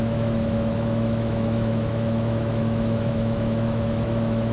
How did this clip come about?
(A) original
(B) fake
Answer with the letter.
B